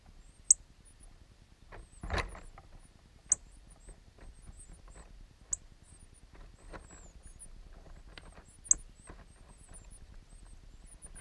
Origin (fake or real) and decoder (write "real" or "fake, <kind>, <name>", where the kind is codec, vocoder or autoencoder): real